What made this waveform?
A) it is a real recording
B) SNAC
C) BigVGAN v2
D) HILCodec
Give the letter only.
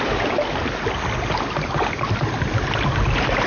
A